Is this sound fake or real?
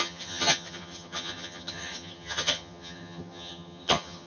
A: fake